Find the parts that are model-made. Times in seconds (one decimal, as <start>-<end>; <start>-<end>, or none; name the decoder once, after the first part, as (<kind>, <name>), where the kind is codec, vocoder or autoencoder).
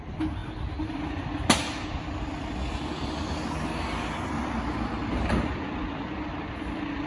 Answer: none